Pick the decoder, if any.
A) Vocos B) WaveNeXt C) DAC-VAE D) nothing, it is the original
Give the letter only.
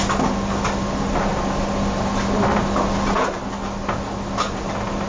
D